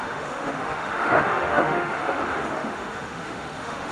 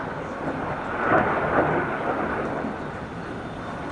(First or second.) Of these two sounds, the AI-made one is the first